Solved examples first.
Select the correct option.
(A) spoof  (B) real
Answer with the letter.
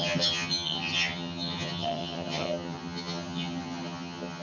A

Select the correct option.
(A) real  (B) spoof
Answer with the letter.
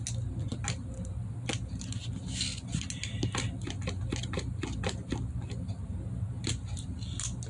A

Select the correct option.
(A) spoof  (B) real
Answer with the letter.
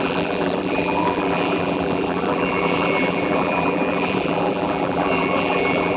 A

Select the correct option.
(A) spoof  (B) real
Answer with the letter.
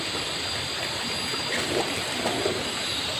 B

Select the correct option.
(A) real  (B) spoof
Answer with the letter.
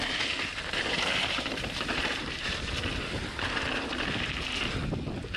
A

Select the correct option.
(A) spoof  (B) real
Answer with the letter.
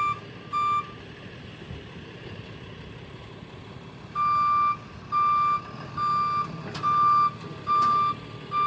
B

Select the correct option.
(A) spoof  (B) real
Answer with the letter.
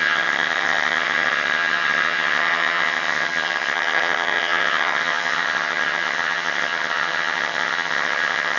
A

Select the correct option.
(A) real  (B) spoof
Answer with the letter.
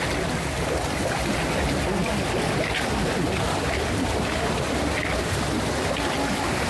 A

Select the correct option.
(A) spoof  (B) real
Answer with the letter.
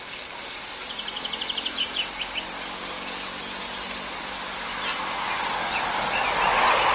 B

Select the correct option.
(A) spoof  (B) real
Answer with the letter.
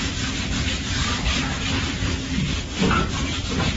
B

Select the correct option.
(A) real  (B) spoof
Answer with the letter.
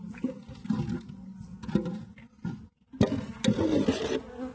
A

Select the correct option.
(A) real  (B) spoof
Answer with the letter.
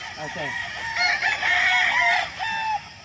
A